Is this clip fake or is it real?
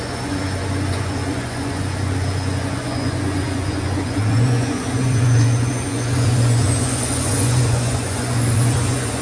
fake